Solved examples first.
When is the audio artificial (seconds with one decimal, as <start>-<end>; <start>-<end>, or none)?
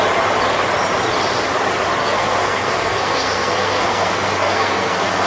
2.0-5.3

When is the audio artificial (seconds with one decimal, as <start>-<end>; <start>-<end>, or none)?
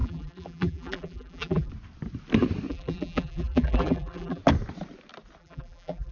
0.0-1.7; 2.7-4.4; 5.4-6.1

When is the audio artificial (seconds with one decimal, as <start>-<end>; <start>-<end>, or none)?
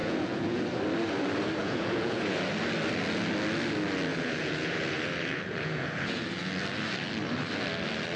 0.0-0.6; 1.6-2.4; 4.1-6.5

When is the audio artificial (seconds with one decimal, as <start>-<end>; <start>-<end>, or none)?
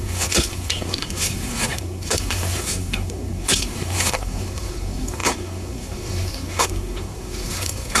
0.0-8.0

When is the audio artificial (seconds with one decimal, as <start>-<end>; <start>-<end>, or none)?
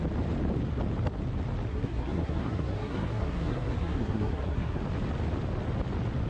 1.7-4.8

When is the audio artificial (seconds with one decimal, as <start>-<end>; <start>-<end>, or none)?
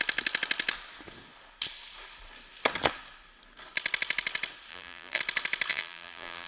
4.7-5.2; 5.7-6.5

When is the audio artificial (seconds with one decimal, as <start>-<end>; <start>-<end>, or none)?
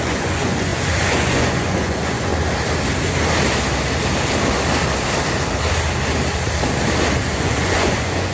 0.0-2.3; 7.2-8.3